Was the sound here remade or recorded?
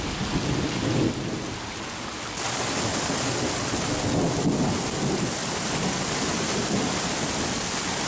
recorded